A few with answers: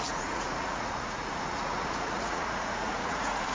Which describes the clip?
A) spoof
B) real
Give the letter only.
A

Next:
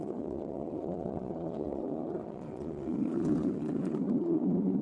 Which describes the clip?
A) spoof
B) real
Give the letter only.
A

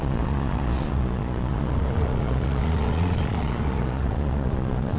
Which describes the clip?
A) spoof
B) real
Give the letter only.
A